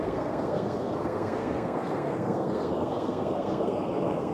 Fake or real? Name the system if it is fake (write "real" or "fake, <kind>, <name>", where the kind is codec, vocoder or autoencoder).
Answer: fake, codec, SNAC